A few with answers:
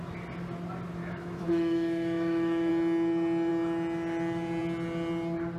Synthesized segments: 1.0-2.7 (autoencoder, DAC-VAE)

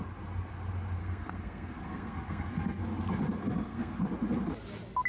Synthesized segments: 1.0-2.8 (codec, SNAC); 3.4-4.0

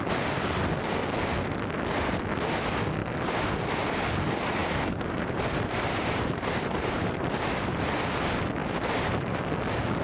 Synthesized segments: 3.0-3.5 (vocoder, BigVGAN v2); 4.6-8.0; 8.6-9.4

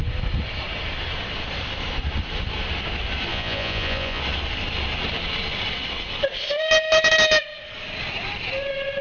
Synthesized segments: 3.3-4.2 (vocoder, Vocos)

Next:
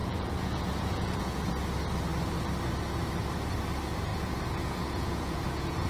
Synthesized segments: 0.0-1.5 (vocoder, Vocos); 4.1-5.9